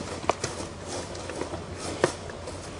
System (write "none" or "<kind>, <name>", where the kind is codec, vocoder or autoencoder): none